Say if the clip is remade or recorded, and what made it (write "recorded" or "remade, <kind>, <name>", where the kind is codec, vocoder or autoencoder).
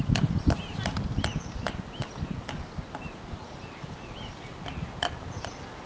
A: recorded